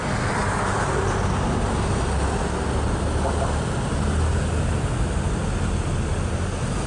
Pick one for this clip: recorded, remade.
recorded